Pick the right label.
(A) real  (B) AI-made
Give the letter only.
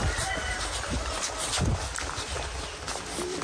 A